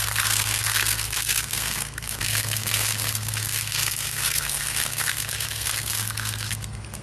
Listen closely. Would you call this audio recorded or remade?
remade